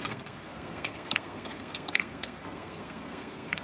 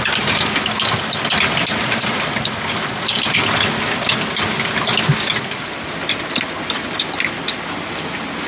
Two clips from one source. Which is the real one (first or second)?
second